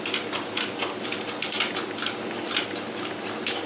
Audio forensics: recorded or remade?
recorded